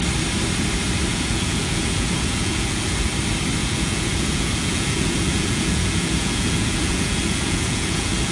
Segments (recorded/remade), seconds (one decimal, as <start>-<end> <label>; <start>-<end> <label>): 0.0-1.1 recorded; 1.1-3.1 remade; 3.1-3.6 recorded; 3.6-8.3 remade